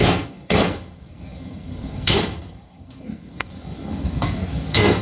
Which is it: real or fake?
fake